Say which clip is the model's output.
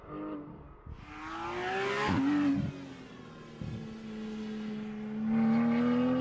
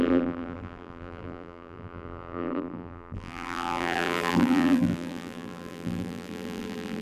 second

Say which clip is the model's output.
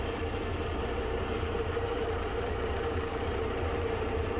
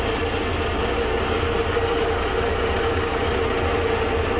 first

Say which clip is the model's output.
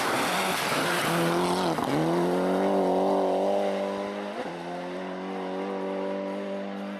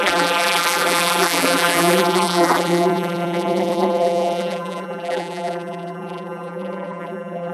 second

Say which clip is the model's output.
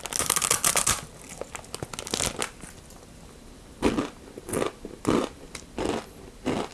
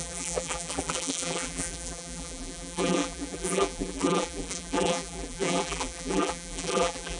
second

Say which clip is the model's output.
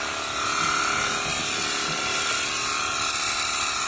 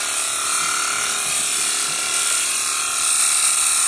second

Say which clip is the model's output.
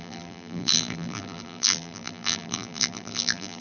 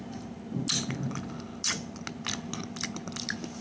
first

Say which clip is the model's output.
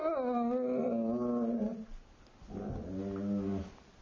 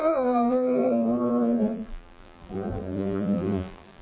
second